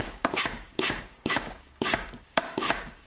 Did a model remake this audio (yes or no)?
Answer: yes